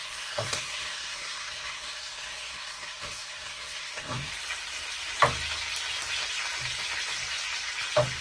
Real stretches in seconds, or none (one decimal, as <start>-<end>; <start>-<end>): 4.3-8.2